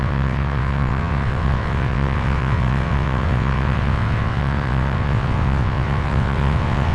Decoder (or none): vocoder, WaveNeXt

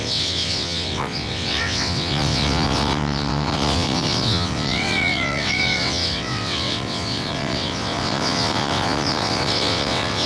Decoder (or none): vocoder, WaveNeXt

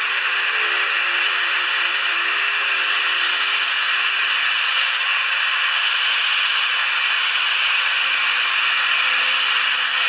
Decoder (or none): none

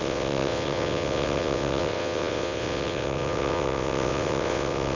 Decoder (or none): vocoder, WaveNeXt